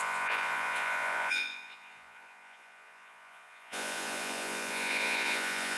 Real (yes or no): no